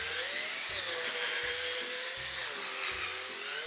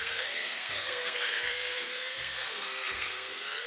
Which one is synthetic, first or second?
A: second